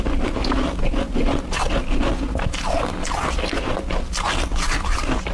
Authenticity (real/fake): real